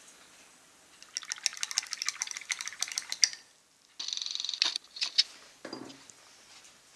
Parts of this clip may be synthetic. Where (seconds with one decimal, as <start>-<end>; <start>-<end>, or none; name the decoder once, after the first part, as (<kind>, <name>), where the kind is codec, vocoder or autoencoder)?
none